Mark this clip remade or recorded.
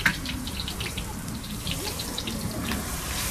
remade